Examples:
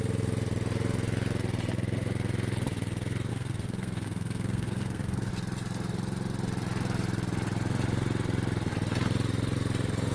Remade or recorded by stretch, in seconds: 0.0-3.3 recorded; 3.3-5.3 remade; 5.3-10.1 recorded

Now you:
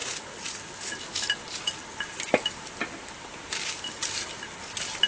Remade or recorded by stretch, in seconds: 0.0-5.1 recorded